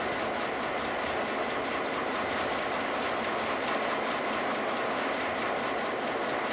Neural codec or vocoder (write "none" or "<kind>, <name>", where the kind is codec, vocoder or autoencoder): none